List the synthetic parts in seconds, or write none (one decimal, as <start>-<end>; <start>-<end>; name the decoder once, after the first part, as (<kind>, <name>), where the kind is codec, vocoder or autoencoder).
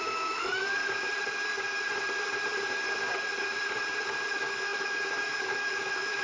0.0-0.8 (autoencoder, DAC-VAE); 4.3-6.2